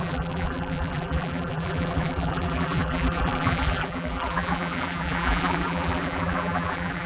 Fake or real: fake